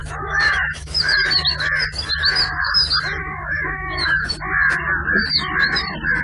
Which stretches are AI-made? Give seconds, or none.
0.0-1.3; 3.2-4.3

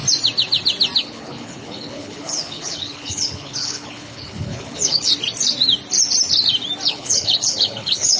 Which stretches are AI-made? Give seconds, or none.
1.0-5.1; 6.9-8.2